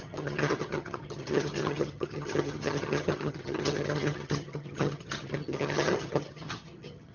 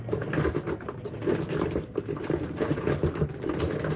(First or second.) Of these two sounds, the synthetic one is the first